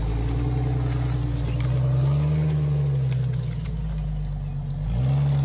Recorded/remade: recorded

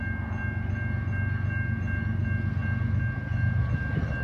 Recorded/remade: recorded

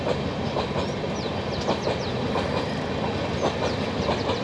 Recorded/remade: recorded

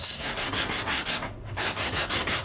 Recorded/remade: remade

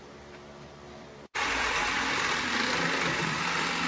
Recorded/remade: recorded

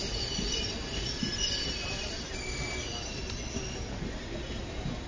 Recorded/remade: recorded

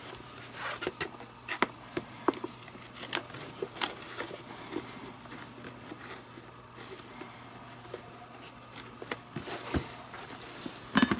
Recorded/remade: recorded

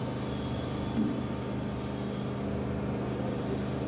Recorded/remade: recorded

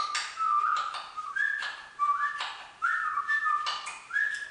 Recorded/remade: recorded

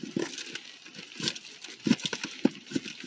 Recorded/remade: recorded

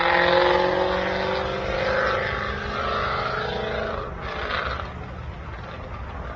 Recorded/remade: recorded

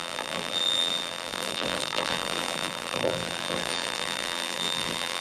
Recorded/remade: remade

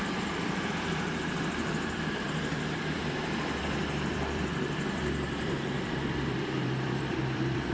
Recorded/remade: remade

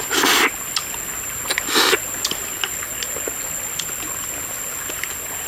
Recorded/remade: recorded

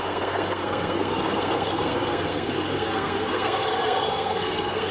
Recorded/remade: remade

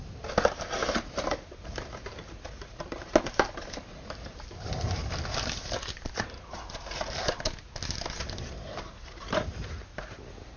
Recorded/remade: recorded